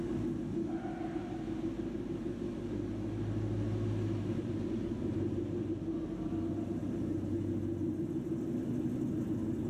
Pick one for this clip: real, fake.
real